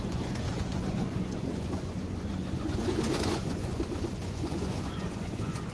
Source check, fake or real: fake